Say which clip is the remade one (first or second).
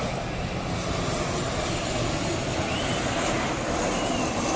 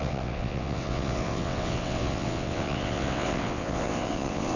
second